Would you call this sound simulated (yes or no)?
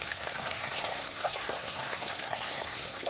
yes